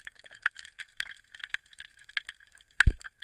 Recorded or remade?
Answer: remade